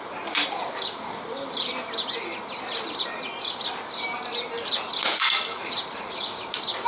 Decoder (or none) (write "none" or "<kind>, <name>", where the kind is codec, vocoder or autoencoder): none